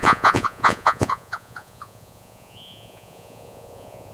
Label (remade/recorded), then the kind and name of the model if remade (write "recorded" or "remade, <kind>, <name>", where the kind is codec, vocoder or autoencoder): remade, vocoder, Vocos